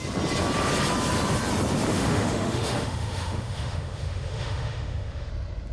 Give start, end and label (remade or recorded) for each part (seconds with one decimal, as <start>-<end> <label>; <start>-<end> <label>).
0.0-1.9 recorded; 1.9-5.3 remade; 5.3-5.7 recorded